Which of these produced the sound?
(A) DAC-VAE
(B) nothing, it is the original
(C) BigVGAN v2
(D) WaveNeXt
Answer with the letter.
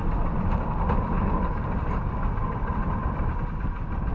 B